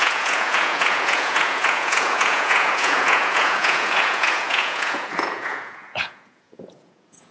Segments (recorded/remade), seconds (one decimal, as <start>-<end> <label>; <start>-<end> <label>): 0.0-7.3 remade